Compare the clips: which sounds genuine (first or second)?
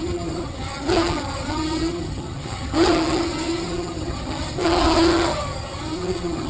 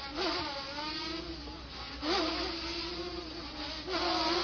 second